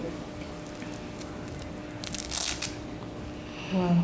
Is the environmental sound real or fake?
real